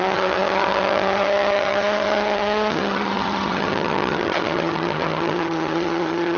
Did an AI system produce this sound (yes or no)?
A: yes